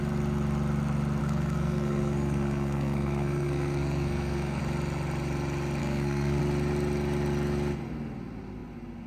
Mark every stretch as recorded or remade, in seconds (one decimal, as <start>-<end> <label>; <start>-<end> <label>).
0.0-1.2 recorded; 1.2-4.6 remade; 4.6-5.8 recorded; 5.8-6.4 remade; 6.4-9.1 recorded